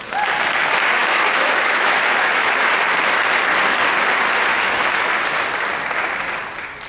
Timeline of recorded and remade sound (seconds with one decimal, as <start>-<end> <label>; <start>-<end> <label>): 0.0-1.0 recorded; 1.0-2.8 remade; 2.8-4.5 recorded; 4.5-5.1 remade; 5.1-6.9 recorded